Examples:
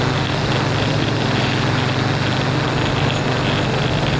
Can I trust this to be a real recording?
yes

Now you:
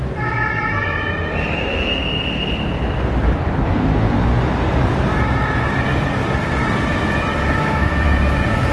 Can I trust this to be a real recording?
no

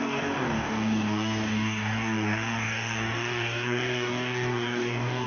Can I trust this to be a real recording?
no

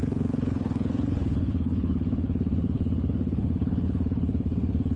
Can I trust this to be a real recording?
no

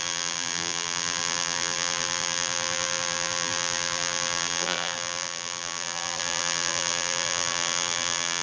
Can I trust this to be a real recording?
no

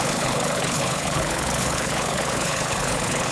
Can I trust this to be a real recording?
no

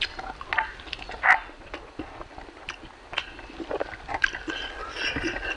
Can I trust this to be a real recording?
yes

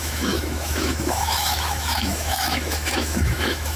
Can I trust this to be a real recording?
no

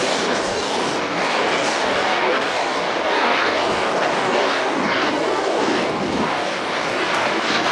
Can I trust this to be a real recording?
no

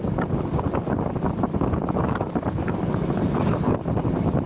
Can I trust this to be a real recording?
yes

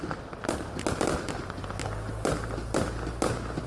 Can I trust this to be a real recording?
yes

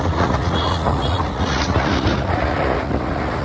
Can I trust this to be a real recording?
no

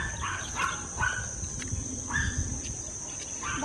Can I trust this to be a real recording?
yes